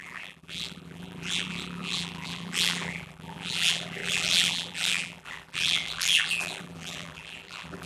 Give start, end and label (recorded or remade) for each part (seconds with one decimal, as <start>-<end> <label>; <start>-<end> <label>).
0.0-7.9 remade